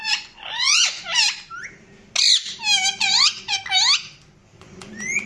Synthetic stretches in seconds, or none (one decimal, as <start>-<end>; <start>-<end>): 0.0-1.2; 3.0-3.6; 4.4-5.3